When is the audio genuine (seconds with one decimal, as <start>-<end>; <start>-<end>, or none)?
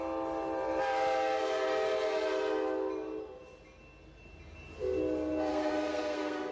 0.0-5.5